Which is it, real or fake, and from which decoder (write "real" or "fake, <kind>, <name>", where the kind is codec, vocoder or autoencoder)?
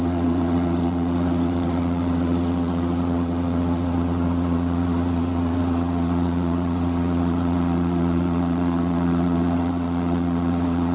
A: fake, vocoder, Vocos